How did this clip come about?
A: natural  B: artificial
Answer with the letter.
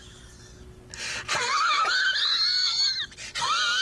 A